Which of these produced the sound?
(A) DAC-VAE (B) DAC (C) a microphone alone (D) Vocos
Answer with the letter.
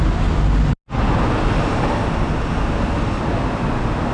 C